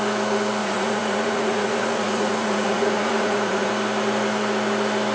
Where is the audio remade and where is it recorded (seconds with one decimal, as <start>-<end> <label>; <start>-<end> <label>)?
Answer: 0.0-0.6 recorded; 0.6-3.7 remade; 3.7-5.1 recorded